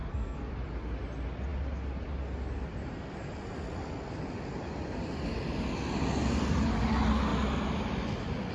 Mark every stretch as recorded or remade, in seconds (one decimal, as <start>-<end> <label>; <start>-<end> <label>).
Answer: 0.0-0.5 remade; 0.5-8.5 recorded